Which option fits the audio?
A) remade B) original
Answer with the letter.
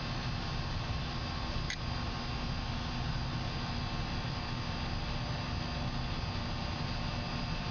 B